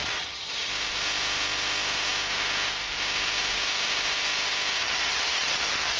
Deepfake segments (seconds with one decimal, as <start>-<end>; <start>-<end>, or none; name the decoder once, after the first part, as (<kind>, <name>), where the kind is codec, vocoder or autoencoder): 0.0-0.7 (vocoder, HiFi-GAN); 4.8-6.0